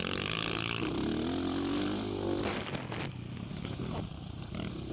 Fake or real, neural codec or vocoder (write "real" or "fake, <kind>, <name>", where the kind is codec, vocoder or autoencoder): real